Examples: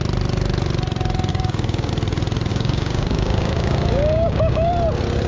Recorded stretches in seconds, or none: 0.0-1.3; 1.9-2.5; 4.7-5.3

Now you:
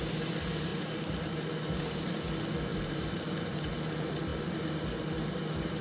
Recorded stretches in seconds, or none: 0.0-0.7; 1.5-2.7; 3.7-5.8

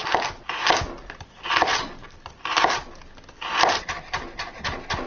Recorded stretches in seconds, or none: 0.0-5.1

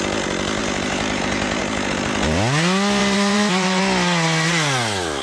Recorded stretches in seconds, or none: 0.0-0.6; 1.6-3.0; 3.8-5.2

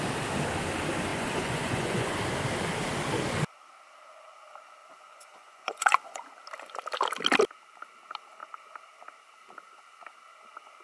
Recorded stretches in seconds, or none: 0.0-1.1; 2.2-4.8; 6.3-10.8

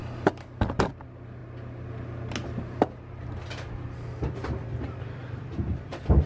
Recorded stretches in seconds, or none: 0.0-6.3

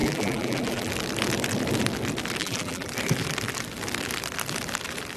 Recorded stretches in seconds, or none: 0.9-2.4; 2.9-5.2